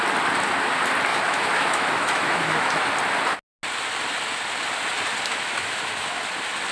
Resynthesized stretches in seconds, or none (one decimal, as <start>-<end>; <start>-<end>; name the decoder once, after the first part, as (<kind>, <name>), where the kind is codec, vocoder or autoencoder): 1.1-2.9 (autoencoder, DAC-VAE); 5.3-6.2